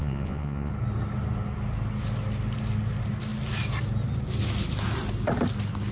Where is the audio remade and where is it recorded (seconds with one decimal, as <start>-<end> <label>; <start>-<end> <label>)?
0.0-0.7 remade; 0.7-5.9 recorded